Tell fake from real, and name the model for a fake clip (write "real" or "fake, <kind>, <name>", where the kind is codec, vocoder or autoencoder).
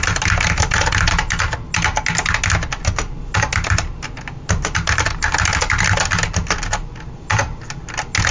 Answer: real